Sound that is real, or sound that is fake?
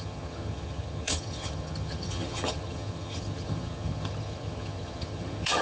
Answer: fake